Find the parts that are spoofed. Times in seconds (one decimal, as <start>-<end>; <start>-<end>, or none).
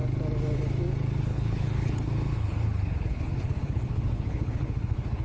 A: 1.2-5.2